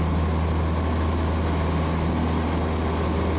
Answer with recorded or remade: recorded